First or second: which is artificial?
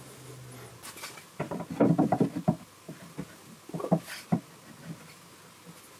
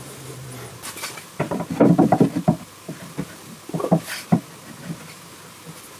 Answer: second